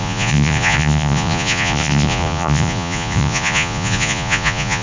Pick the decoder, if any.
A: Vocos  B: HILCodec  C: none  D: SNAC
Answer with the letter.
A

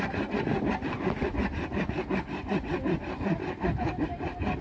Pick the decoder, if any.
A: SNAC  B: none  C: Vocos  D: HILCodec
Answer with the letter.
B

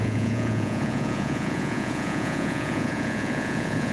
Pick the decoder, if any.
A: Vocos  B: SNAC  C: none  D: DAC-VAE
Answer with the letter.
A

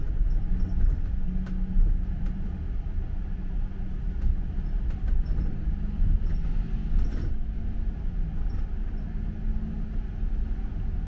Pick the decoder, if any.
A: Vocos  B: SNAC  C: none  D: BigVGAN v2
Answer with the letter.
C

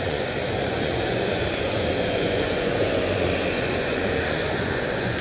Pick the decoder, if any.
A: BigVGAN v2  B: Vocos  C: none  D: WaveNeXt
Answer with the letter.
B